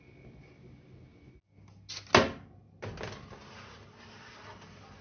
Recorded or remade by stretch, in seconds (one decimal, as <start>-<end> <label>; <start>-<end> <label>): 0.0-5.0 recorded